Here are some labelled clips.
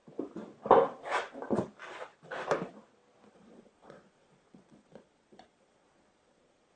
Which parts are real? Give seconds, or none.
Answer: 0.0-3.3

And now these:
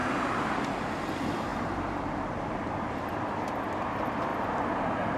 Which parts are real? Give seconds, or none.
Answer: 0.0-1.1

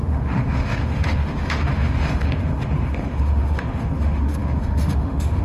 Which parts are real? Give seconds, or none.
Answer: none

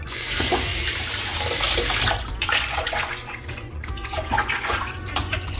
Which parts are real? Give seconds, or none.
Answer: 0.7-2.2